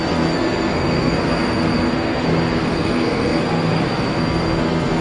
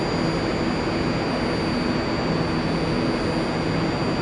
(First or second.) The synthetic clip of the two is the first